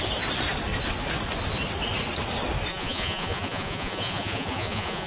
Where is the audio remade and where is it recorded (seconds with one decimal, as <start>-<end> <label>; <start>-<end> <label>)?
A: 0.0-2.7 recorded; 2.7-5.1 remade